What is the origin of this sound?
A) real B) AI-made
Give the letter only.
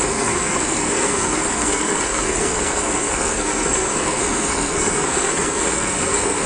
B